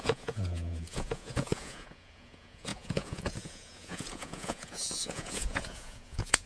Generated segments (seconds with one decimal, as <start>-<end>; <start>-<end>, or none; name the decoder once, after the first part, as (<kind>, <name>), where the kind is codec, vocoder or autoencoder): 0.0-6.5 (vocoder, Vocos)